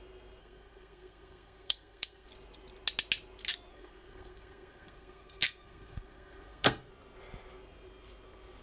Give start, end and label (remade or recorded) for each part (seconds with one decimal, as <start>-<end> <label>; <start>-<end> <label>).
0.0-0.4 recorded; 0.4-2.3 remade; 2.3-3.7 recorded; 3.7-6.9 remade; 6.9-8.6 recorded